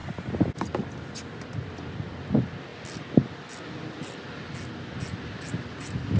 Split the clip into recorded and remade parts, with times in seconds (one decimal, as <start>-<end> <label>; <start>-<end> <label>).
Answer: 0.0-6.2 recorded